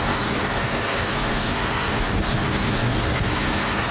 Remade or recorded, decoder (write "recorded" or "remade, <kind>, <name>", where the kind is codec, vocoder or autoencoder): remade, codec, SNAC